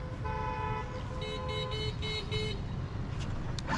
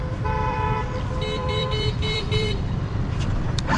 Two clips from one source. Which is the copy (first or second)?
second